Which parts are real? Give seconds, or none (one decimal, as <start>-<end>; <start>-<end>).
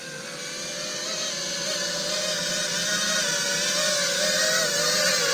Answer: 0.0-5.3